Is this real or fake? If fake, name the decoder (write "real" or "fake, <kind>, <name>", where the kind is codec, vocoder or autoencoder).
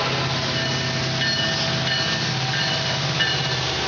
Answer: real